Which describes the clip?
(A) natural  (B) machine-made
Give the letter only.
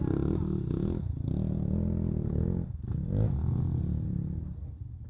A